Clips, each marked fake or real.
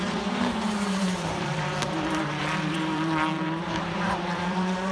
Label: fake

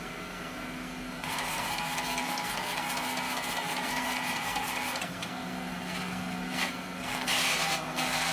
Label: fake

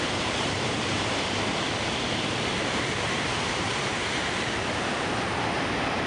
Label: fake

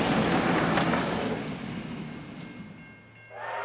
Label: real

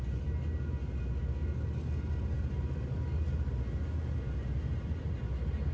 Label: real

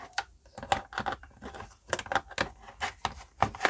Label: real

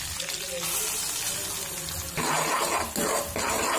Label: real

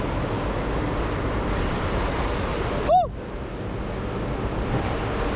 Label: fake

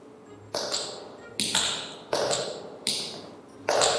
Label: real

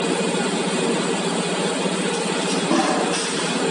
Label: fake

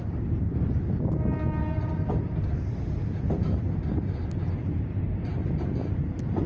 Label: real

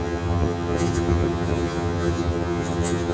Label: fake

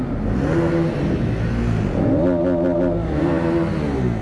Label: real